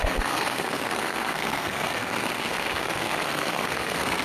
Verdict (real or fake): fake